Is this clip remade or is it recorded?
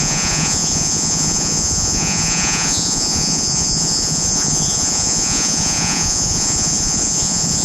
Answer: remade